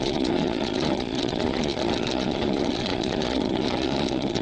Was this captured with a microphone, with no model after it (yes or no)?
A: no